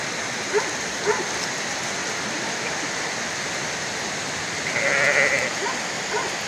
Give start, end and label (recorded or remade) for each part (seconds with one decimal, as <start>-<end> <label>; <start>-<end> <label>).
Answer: 0.0-6.5 recorded